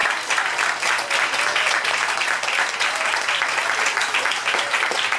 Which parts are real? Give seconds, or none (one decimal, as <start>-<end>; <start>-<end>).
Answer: 0.0-5.2